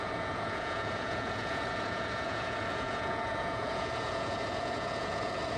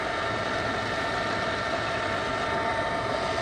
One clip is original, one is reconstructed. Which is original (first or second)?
second